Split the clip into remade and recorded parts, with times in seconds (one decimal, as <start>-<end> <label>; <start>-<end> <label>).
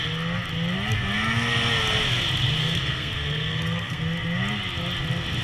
0.0-2.6 recorded; 2.6-4.0 remade; 4.0-5.4 recorded